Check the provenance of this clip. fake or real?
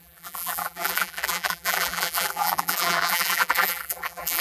fake